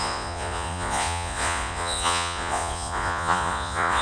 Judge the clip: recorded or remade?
remade